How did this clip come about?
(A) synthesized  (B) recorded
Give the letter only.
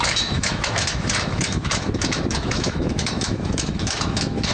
A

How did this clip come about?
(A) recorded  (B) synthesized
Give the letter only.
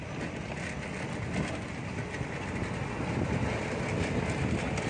A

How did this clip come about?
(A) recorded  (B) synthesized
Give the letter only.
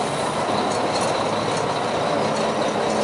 A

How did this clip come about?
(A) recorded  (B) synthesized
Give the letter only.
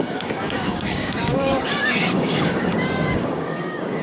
B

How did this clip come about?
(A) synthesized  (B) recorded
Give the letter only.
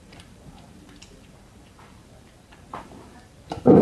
A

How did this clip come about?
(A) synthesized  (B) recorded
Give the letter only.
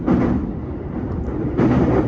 B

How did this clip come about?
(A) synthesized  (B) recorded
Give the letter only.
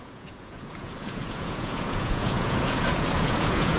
A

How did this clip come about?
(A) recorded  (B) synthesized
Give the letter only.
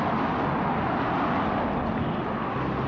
A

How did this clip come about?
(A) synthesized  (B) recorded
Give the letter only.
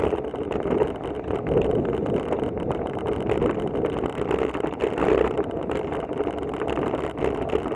B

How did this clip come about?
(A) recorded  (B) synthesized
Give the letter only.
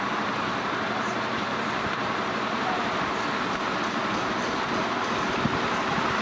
B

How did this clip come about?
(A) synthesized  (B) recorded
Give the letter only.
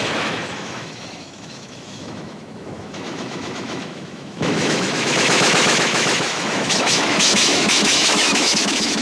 A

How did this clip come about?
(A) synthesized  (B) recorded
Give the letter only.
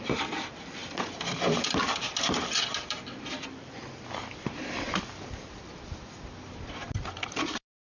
A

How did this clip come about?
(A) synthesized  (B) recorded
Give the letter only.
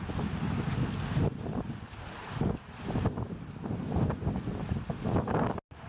B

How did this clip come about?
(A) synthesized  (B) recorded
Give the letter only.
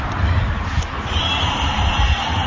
A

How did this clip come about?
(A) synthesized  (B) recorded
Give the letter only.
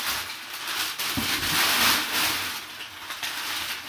B